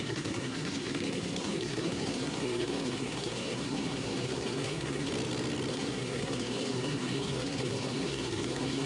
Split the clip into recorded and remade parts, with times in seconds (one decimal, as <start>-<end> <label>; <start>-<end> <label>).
0.0-5.1 remade; 5.1-5.7 recorded; 5.7-8.9 remade